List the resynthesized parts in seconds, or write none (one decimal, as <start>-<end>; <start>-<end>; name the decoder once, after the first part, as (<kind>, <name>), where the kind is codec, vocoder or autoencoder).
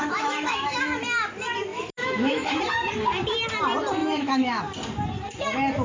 0.0-0.8 (autoencoder, DAC-VAE); 1.7-2.6; 4.0-4.6